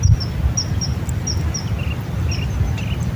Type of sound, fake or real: real